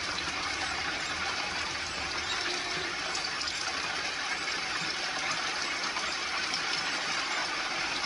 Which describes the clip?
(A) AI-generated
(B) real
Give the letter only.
A